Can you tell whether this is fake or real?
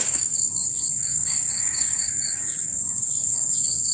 fake